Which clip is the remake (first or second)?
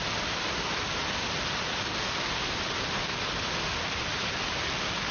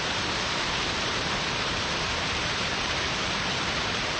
second